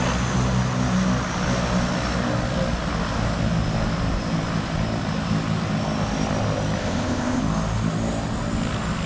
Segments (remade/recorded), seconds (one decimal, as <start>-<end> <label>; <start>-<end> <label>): 0.0-6.8 recorded; 6.8-7.4 remade; 7.4-9.1 recorded